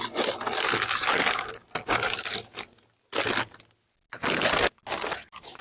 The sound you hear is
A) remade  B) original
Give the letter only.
B